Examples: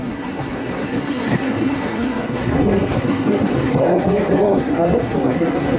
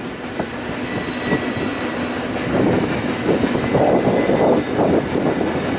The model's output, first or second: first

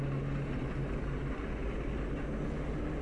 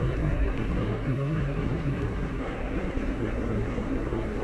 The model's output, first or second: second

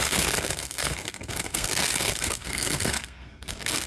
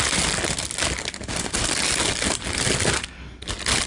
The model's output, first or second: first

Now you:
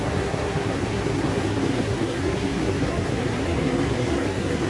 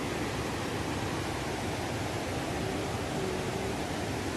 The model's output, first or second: first